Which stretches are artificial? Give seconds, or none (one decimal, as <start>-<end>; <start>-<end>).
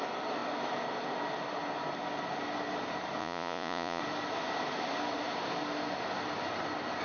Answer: 3.2-4.0